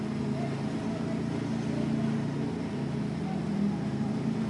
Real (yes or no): yes